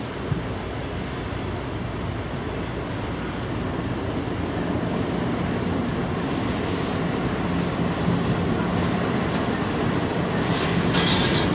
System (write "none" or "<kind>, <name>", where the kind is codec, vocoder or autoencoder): none